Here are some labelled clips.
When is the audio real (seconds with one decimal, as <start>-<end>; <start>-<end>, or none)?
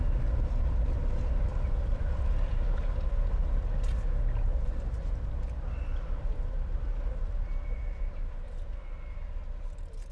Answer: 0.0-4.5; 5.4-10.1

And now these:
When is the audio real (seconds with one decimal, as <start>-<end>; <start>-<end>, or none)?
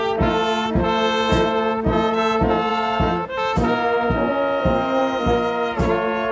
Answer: 0.0-6.3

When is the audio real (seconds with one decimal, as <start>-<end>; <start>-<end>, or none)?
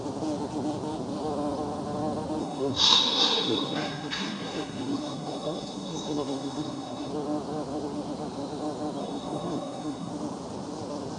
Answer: 0.0-2.4; 7.1-9.0; 10.1-11.2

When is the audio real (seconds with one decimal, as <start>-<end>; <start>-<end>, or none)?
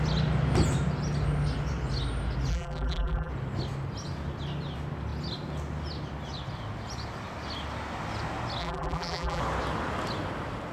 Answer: 0.0-2.5; 3.3-8.6; 9.4-10.7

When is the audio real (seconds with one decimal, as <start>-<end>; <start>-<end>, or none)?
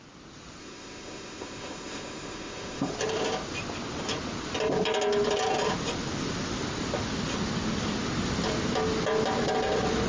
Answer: 0.0-0.6; 2.9-10.1